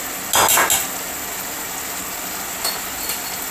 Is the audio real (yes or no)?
yes